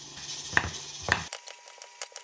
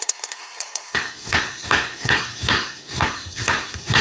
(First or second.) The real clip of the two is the first